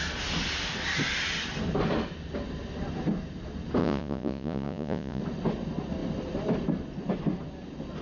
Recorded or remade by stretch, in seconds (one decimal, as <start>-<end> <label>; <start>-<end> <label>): 0.0-3.8 recorded; 3.8-5.2 remade; 5.2-8.0 recorded